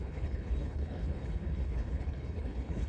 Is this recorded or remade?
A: remade